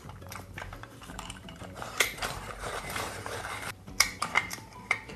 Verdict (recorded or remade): remade